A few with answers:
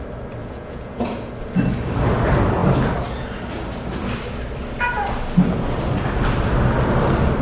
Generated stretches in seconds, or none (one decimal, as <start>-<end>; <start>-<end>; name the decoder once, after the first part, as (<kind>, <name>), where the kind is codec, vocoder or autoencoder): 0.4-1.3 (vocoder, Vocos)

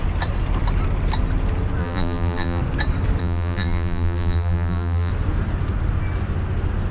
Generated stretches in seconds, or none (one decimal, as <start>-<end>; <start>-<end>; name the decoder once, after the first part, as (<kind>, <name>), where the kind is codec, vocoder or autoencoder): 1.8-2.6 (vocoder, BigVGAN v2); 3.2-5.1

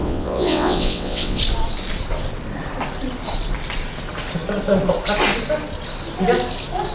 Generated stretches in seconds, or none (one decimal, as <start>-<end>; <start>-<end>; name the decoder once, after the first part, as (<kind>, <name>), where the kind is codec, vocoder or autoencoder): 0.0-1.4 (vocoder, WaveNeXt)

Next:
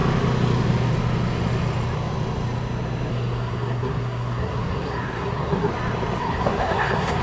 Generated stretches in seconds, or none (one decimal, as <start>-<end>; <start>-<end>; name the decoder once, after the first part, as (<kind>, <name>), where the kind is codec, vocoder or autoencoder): 3.1-5.7 (codec, SNAC); 6.2-7.2

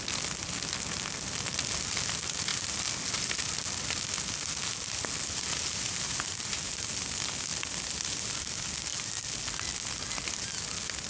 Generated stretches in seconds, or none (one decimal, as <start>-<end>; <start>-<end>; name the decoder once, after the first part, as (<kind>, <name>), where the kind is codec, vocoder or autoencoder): none